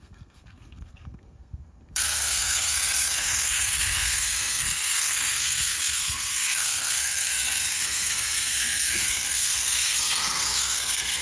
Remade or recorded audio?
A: remade